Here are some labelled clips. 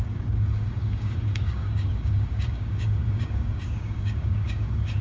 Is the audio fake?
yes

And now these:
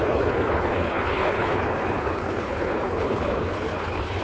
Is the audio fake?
yes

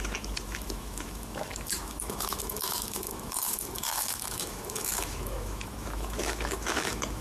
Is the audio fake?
yes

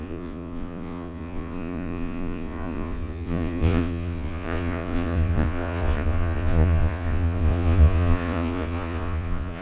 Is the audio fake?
yes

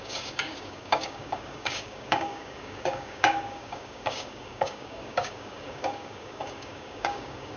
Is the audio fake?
yes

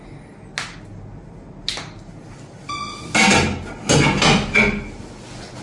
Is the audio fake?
no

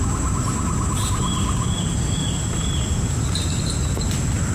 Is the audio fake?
no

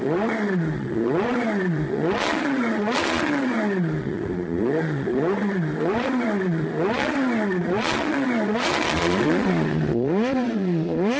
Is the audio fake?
yes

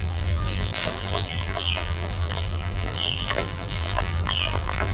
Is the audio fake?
yes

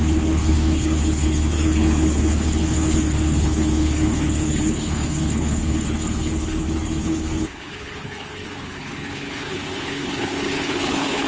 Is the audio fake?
yes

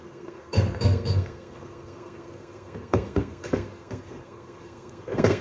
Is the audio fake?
yes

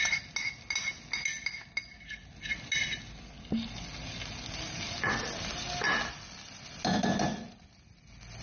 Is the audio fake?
no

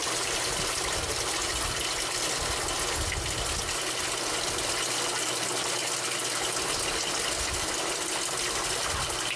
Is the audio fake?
no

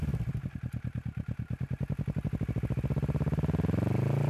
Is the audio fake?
no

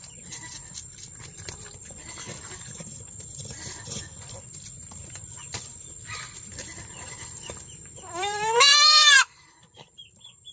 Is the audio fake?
yes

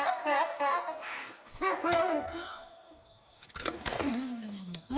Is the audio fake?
yes